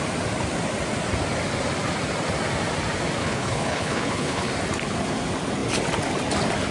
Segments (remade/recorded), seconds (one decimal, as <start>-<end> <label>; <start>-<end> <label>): 0.0-3.2 recorded; 3.2-4.5 remade; 4.5-6.7 recorded